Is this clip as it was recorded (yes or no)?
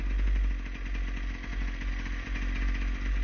yes